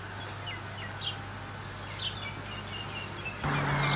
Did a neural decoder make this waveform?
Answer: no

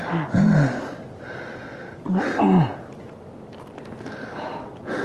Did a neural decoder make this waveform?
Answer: no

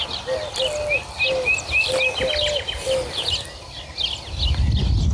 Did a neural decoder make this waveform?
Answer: no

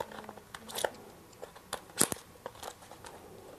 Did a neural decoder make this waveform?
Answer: no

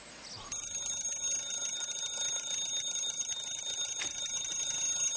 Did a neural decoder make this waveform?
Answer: no